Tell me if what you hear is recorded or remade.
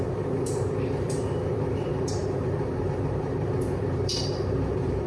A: remade